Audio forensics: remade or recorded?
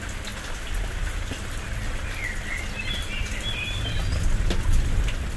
recorded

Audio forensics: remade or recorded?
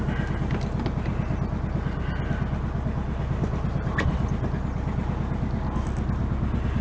recorded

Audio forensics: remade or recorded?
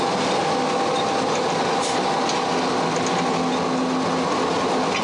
recorded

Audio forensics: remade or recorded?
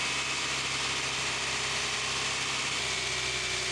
recorded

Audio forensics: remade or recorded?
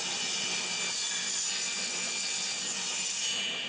recorded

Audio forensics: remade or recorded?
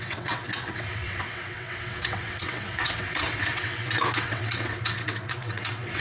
remade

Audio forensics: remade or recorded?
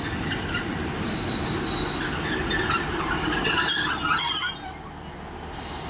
recorded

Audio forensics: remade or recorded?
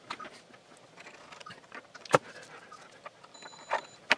recorded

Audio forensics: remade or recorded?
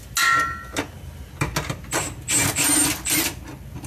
recorded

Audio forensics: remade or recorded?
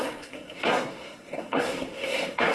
remade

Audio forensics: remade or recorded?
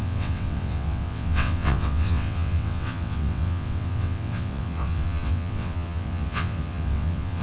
remade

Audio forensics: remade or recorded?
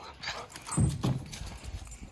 recorded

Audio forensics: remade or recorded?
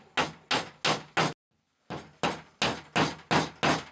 recorded